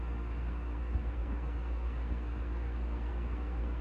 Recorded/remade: remade